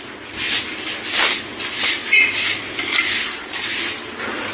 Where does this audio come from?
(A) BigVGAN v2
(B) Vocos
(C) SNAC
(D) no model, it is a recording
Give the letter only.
D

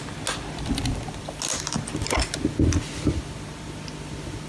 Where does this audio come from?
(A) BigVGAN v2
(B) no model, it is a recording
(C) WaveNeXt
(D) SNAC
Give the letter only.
B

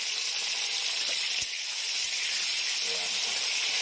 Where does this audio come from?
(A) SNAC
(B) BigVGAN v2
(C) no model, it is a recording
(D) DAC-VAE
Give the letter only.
C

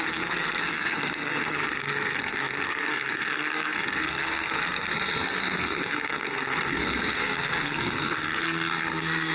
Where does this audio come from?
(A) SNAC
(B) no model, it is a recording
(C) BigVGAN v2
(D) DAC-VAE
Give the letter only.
A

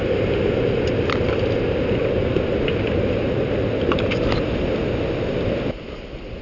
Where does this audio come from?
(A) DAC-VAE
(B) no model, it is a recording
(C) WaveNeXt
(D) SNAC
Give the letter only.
B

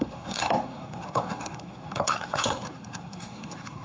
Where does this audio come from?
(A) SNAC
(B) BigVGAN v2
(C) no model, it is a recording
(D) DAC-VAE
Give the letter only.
A